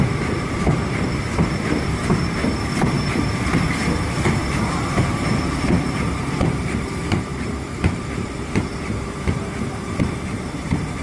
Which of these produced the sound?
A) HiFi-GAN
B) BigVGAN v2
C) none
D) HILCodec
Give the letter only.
B